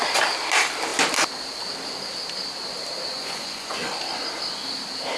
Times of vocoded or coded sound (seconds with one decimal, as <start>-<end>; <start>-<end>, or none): 3.1-3.9

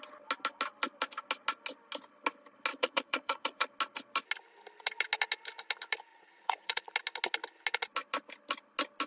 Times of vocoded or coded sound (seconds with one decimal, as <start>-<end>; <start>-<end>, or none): 2.7-3.7; 6.1-6.9

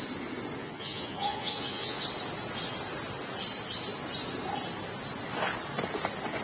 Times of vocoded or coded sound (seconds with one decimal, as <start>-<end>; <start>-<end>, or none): 0.6-2.0

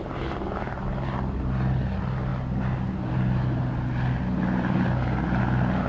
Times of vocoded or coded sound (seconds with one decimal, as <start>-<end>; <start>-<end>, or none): none

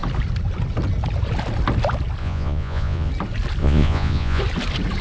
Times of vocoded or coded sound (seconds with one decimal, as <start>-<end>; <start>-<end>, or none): 2.2-3.1; 3.6-4.4

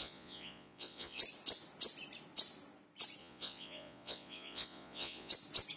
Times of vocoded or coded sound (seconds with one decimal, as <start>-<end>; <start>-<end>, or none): 0.0-1.2; 3.2-5.3

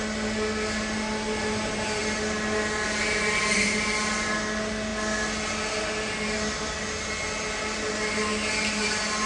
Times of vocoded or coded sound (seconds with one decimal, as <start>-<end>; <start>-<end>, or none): none